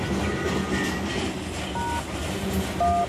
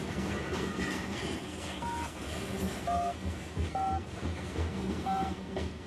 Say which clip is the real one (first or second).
first